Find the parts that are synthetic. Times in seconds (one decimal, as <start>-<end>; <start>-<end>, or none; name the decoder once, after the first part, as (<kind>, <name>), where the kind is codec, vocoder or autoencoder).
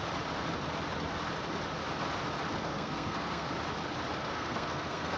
2.6-3.5 (codec, SNAC); 4.1-5.2